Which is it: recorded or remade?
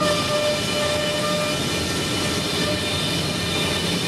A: recorded